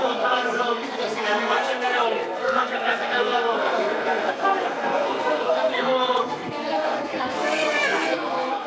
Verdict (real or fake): fake